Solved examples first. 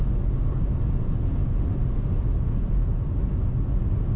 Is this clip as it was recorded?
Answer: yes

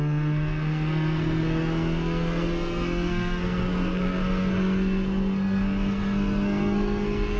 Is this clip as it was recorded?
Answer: no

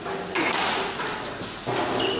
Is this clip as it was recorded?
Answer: yes